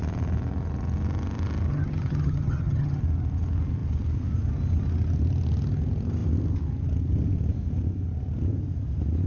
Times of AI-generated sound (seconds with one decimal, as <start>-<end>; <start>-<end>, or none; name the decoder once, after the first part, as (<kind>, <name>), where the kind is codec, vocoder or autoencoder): 1.7-3.0 (vocoder, HiFi-GAN)